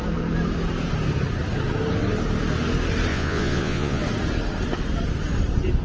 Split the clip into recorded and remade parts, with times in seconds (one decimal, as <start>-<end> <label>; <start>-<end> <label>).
0.0-3.1 recorded; 3.1-4.0 remade; 4.0-5.8 recorded